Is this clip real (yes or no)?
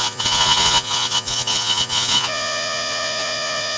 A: no